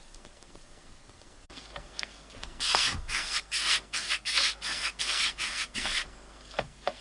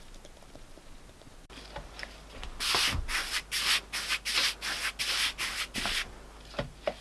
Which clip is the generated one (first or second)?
first